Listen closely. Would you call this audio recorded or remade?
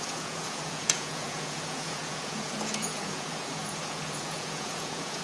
remade